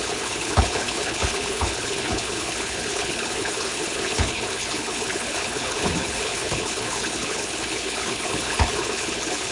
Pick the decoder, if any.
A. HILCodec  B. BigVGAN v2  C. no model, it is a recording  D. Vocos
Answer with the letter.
A